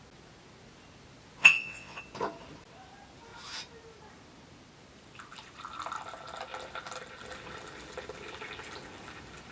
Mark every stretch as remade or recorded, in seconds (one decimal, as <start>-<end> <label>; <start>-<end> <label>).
0.0-1.4 recorded; 1.4-2.0 remade; 2.0-9.5 recorded